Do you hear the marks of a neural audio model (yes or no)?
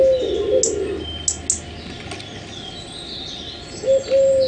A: no